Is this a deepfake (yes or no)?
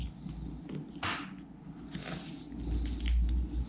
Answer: no